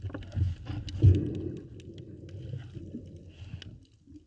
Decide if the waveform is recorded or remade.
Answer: recorded